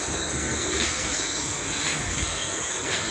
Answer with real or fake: fake